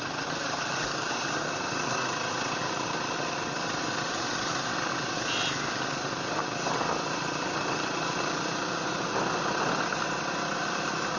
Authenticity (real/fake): real